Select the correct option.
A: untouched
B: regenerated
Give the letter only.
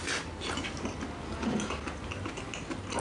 A